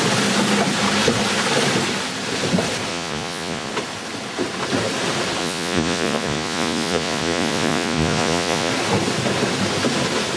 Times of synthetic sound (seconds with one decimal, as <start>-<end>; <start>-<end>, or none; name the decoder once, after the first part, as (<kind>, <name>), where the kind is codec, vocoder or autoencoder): 2.9-3.7 (vocoder, Vocos); 5.4-8.7